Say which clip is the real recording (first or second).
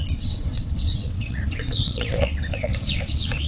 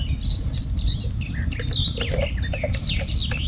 second